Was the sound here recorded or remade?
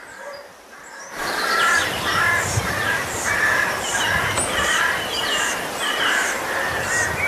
recorded